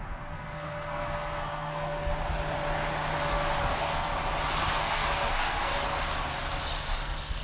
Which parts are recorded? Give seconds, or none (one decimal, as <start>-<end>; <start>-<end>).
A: 2.1-3.6; 4.1-4.7; 5.7-6.8